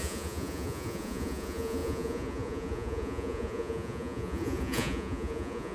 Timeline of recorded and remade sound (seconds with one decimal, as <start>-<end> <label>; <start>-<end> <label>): 0.0-5.7 remade